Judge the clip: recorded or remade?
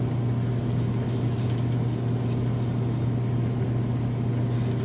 recorded